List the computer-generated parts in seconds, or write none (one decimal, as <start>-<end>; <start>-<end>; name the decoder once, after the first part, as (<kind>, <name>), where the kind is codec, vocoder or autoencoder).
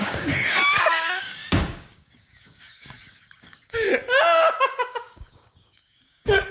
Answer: 0.0-3.9 (codec, DAC); 4.6-6.5